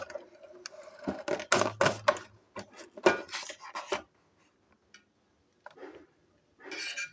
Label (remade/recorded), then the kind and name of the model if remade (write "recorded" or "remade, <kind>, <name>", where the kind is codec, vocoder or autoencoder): recorded